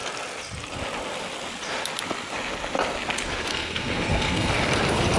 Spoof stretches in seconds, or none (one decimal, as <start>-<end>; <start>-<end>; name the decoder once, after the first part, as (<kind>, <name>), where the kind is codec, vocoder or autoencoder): 3.5-4.5 (codec, SNAC)